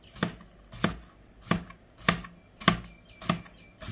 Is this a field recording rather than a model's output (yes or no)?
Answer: yes